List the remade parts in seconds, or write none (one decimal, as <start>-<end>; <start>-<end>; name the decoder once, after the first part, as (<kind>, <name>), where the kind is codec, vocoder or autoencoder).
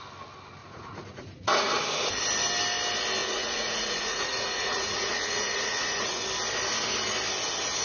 0.6-1.8 (vocoder, Vocos); 3.2-6.2